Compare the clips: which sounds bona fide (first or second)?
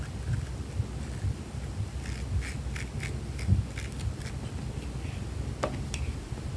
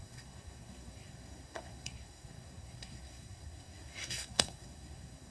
first